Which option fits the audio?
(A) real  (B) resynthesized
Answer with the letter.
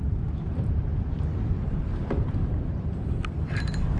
A